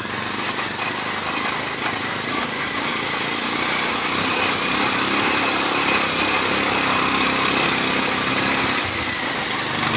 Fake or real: real